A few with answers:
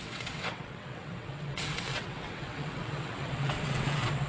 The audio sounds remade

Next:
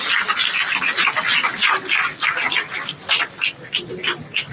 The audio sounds recorded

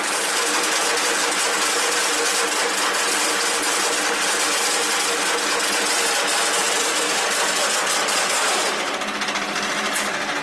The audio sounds recorded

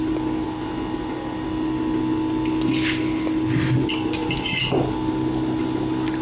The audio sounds recorded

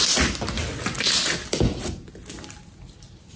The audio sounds recorded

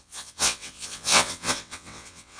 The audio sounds remade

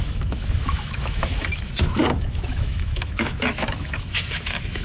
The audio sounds remade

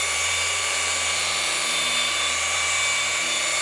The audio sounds remade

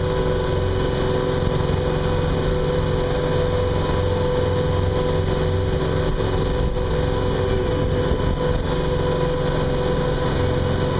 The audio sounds recorded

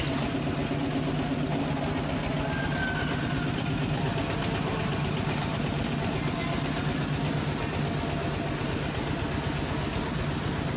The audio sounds recorded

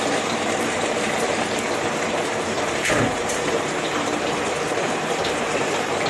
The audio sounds remade